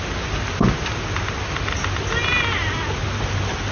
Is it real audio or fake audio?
real